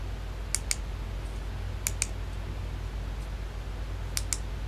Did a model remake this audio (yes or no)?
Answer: no